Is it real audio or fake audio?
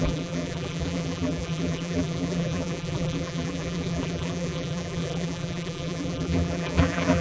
fake